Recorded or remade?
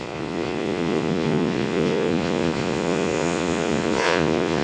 remade